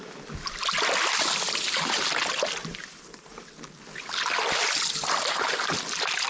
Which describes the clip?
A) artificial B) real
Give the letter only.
B